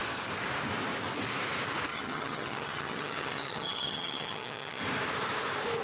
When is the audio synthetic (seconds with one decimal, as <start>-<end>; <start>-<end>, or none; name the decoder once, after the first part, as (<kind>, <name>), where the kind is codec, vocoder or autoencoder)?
1.9-4.8 (vocoder, HiFi-GAN)